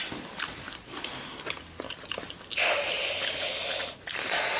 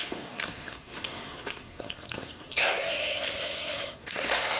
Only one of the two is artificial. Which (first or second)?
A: second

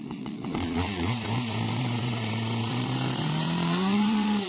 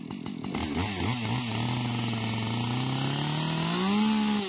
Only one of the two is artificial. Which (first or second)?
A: first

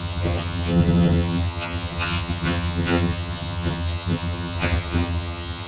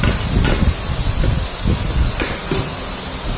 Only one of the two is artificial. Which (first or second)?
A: first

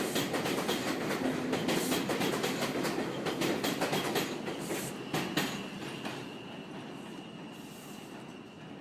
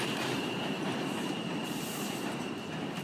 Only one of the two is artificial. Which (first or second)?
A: second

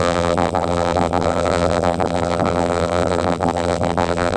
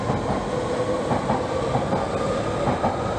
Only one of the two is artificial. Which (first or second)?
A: first